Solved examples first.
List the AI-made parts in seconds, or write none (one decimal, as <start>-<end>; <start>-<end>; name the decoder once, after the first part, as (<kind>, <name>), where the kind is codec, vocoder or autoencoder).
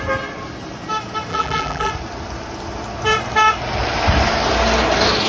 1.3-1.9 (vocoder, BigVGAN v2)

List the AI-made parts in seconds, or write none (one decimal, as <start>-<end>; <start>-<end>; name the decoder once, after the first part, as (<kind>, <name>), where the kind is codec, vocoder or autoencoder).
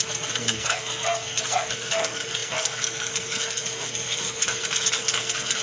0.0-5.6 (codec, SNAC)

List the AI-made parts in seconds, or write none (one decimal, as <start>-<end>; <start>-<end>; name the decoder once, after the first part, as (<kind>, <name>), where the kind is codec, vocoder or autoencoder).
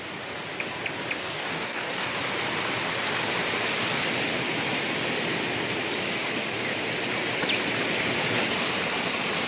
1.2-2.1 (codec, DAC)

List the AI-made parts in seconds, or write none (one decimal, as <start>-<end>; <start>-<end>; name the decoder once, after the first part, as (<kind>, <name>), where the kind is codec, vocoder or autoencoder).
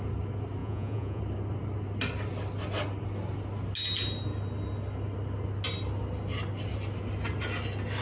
0.6-1.2 (vocoder, Vocos)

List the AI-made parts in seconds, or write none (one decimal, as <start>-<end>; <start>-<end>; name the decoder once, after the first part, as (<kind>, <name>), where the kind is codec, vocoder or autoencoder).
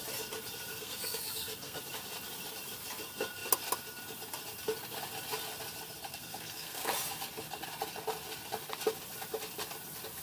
0.7-1.8 (codec, SNAC); 6.1-6.9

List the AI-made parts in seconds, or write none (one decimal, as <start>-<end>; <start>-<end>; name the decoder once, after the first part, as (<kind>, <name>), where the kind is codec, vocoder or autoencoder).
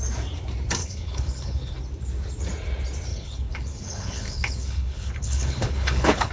0.8-1.7 (codec, HILCodec); 3.1-6.3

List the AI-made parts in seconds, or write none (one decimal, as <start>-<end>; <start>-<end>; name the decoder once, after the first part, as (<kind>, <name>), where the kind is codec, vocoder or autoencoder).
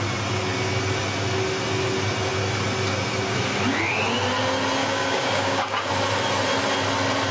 4.8-5.9 (codec, DAC)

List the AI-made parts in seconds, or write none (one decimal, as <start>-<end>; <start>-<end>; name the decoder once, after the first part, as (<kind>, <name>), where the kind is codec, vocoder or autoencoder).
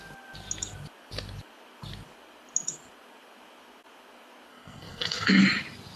4.5-5.4 (codec, SNAC)